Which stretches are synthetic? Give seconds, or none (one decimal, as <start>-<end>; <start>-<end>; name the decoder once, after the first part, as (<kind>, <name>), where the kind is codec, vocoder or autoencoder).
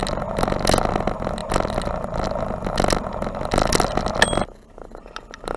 none